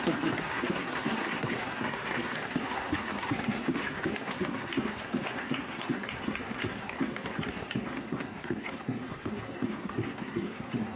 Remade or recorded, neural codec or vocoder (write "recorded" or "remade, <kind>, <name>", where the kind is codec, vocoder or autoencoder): remade, codec, SNAC